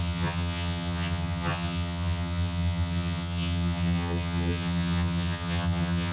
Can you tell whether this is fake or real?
fake